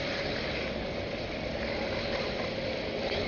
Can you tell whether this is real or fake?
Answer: real